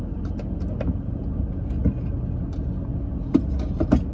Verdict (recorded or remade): recorded